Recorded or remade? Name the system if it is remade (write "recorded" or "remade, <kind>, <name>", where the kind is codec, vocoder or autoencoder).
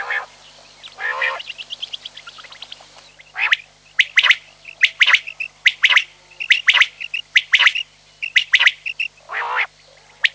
recorded